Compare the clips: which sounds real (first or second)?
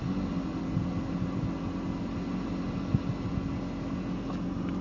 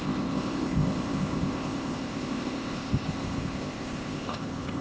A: first